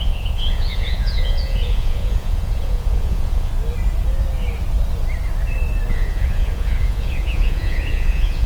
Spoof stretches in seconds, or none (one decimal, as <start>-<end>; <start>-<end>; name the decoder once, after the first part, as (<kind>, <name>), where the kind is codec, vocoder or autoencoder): 0.0-3.5 (vocoder, Vocos); 5.9-8.5